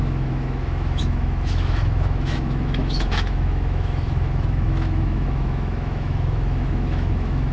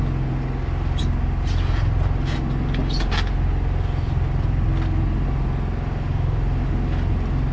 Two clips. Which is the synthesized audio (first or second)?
first